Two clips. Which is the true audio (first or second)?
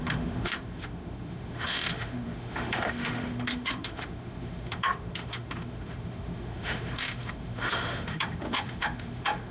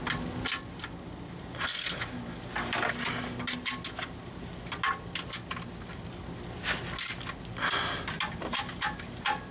second